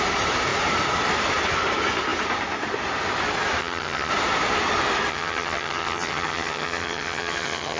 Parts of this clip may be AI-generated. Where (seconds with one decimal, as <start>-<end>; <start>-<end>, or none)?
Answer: 3.6-4.1; 5.1-7.8